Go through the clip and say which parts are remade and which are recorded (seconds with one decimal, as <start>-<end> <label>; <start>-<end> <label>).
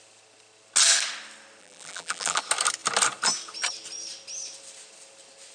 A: 0.0-1.6 recorded; 1.6-2.4 remade; 2.4-5.5 recorded